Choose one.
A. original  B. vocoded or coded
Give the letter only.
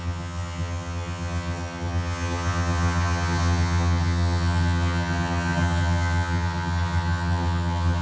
B